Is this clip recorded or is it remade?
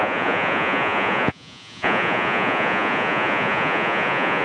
remade